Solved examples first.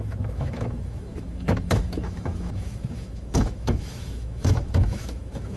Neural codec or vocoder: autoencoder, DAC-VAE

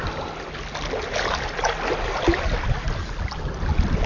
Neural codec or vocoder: none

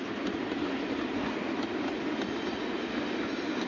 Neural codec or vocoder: none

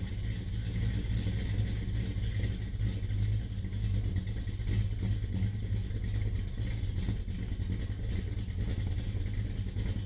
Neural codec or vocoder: none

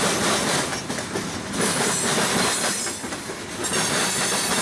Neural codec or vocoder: none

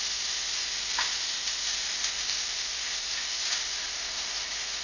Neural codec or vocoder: none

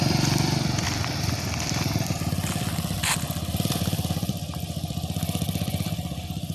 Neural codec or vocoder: vocoder, BigVGAN v2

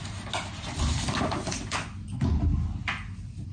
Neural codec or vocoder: none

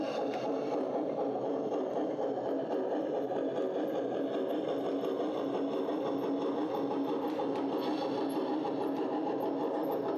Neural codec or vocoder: none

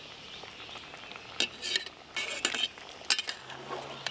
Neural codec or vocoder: none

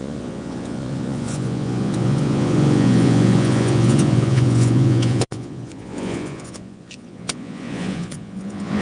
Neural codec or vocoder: vocoder, Vocos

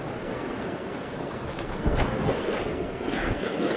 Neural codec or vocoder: codec, SNAC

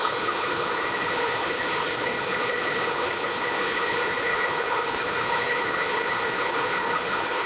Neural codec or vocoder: codec, HILCodec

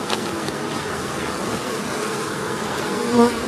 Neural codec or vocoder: codec, SNAC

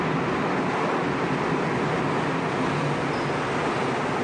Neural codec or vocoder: none